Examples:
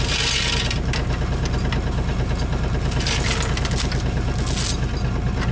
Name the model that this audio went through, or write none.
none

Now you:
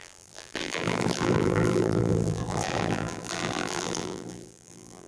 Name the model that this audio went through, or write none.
vocoder, BigVGAN v2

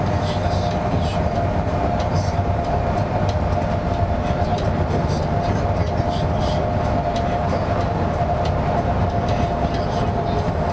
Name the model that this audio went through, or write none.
vocoder, BigVGAN v2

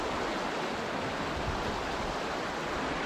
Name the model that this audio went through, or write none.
none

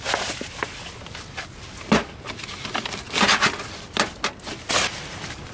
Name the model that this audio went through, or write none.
none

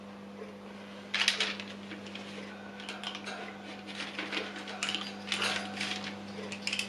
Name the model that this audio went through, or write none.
none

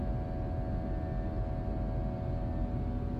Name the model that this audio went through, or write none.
none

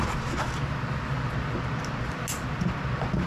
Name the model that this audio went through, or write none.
none